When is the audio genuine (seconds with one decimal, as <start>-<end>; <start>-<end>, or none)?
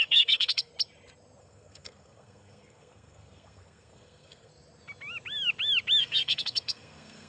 0.7-1.4; 4.5-6.0